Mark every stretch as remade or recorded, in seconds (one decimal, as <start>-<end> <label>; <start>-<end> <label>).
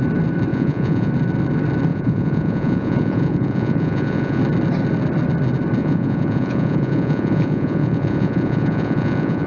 0.0-0.5 recorded; 0.5-1.1 remade; 1.1-1.9 recorded; 1.9-4.4 remade; 4.4-5.8 recorded; 5.8-9.5 remade